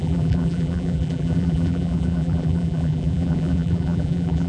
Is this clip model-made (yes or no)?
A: yes